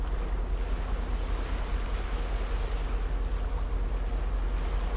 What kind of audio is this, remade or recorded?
recorded